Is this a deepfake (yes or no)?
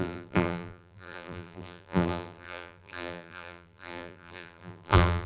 yes